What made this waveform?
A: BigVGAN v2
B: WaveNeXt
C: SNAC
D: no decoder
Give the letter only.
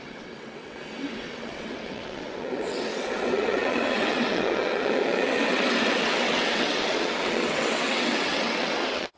B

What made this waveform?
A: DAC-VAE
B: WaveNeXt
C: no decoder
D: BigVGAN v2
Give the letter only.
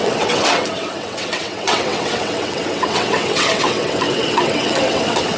B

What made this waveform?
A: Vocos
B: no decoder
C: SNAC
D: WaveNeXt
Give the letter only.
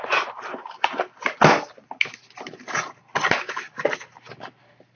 B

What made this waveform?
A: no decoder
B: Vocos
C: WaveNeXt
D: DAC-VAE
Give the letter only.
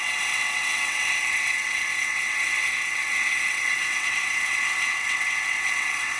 C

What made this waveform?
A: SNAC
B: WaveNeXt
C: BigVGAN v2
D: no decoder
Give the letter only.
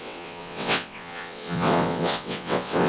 B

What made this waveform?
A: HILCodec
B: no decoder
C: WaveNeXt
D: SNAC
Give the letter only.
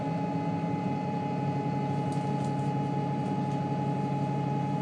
B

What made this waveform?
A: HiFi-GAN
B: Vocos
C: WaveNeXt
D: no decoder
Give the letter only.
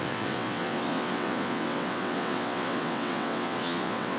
C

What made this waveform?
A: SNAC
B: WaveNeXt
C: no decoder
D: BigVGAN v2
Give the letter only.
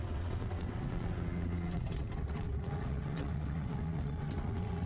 B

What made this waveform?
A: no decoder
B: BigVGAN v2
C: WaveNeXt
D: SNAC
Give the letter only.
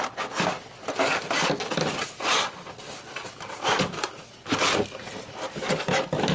A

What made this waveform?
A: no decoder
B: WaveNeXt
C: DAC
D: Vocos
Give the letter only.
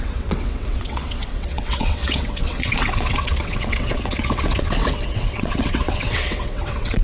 B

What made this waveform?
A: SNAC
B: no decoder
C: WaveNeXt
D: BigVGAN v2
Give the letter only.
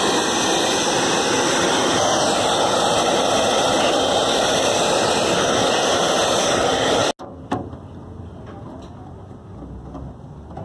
B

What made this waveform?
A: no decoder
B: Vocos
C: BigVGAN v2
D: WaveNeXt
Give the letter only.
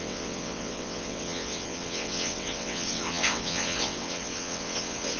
D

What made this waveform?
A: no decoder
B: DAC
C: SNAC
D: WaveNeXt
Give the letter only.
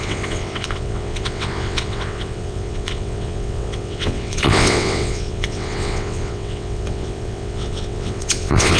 D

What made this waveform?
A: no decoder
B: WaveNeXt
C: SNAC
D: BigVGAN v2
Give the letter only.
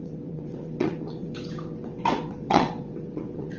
B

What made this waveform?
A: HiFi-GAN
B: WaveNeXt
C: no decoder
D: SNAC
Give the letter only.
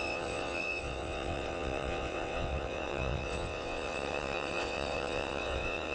B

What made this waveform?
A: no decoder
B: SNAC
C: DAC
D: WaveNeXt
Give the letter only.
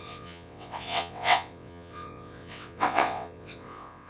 D